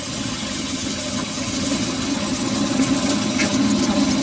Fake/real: fake